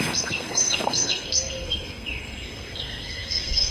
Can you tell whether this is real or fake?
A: fake